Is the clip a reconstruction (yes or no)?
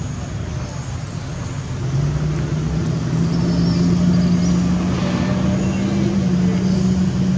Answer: no